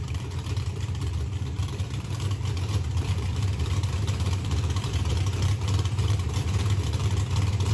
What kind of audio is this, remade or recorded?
remade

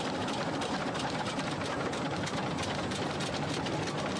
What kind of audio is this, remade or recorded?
recorded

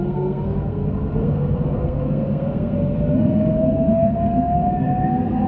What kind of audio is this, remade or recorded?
remade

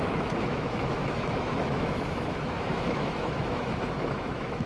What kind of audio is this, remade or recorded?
remade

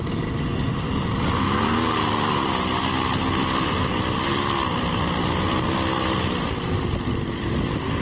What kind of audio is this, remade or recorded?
remade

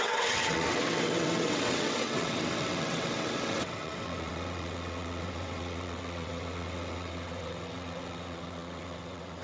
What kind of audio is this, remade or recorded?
remade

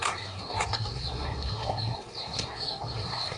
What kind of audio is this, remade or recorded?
remade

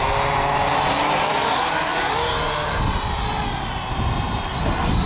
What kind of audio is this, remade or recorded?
recorded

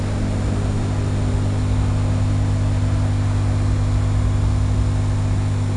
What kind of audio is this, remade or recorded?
recorded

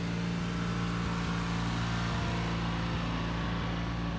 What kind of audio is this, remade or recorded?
recorded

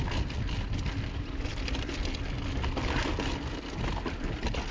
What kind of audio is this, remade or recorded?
recorded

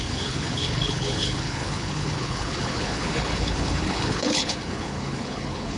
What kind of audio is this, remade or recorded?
remade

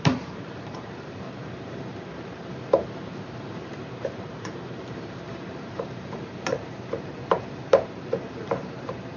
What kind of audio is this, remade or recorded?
remade